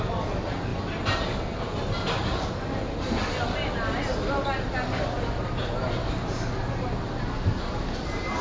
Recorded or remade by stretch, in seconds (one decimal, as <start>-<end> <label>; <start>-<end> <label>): 0.0-8.4 recorded